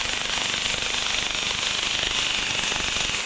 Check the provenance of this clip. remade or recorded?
recorded